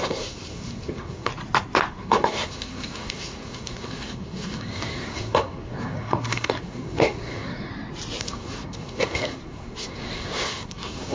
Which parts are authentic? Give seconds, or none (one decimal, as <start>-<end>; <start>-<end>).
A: 1.3-1.9; 7.7-8.2